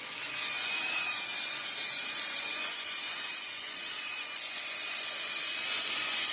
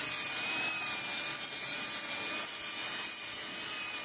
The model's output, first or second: first